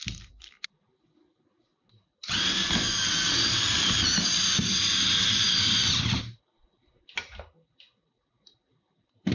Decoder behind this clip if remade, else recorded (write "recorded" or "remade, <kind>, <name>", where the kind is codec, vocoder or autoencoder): recorded